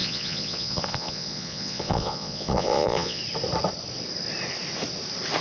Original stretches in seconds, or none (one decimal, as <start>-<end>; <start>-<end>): 3.2-5.4